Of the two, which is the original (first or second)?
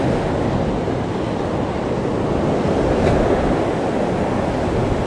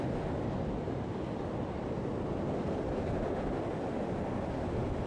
first